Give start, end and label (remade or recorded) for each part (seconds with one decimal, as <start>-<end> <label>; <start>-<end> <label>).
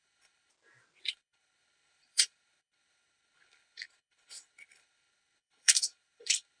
0.0-0.5 remade; 0.5-1.1 recorded; 1.1-6.6 remade